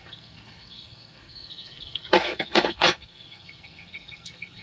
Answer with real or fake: fake